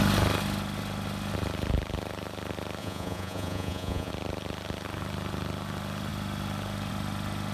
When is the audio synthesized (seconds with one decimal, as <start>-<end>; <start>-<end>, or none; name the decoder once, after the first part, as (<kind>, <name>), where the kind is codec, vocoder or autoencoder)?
2.8-4.1 (vocoder, Vocos)